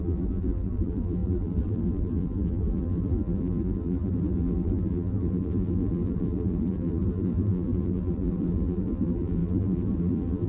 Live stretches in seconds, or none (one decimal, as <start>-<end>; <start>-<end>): none